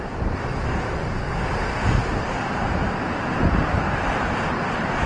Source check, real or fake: real